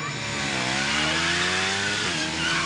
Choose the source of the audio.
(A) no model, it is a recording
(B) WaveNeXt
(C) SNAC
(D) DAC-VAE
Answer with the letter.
A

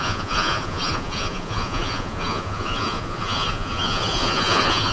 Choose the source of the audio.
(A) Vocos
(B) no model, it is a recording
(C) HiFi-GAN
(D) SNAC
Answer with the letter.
A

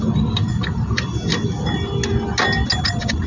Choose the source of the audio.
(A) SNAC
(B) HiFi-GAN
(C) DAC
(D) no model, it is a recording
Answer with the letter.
D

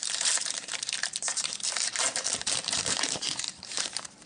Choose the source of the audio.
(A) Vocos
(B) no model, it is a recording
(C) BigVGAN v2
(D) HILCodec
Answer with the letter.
C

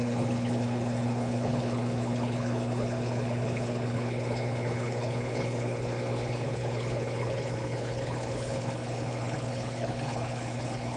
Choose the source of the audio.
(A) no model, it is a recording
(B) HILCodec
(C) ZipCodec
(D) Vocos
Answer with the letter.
B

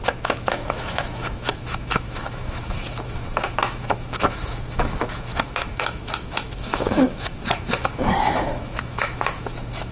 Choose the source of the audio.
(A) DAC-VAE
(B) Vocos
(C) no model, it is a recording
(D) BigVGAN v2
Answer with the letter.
A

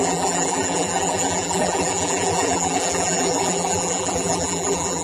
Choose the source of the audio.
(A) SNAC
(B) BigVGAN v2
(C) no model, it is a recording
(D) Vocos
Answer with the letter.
B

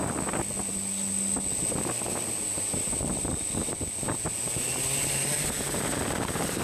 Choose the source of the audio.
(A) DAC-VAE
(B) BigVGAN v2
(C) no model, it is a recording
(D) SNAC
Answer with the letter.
C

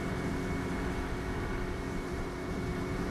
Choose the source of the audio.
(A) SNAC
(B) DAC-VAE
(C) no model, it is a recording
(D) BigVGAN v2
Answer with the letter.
D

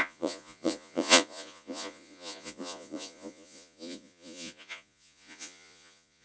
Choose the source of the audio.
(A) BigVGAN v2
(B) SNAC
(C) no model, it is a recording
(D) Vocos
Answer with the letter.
D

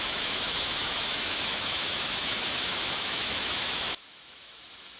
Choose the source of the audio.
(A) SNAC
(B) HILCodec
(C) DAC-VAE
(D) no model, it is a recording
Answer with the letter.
C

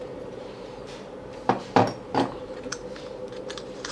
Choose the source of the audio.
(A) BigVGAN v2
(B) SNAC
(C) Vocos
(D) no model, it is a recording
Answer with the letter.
A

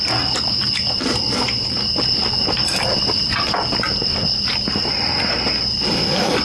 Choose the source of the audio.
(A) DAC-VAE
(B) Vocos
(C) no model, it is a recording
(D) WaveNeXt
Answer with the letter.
C